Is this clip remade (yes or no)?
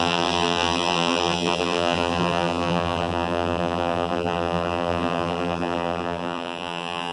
yes